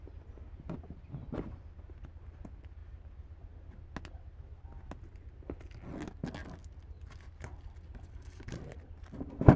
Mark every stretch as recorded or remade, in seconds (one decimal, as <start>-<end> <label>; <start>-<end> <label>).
0.0-9.6 recorded